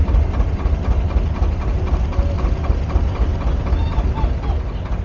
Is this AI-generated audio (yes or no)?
no